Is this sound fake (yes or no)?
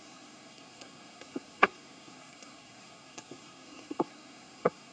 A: yes